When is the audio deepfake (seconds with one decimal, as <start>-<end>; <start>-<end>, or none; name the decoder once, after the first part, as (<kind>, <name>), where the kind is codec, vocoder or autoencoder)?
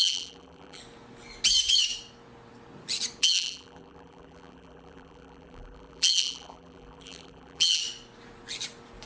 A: 0.0-0.8 (vocoder, BigVGAN v2); 3.2-7.8